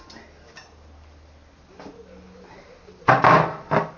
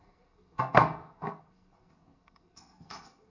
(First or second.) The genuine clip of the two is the first